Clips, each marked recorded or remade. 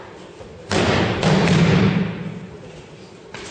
recorded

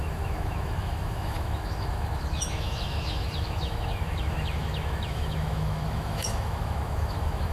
remade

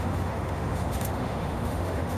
remade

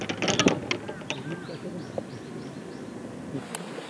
recorded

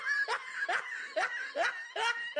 recorded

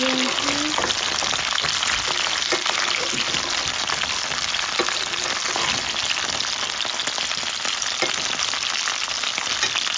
recorded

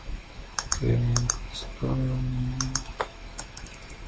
remade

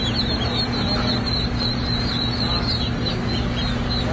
recorded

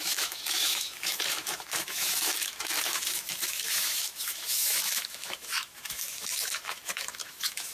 remade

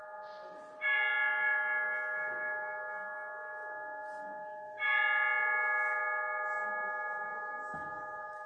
recorded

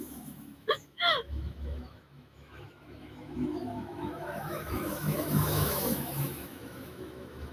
remade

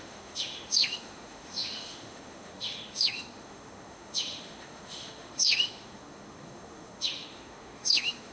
remade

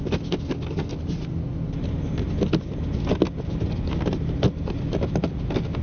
recorded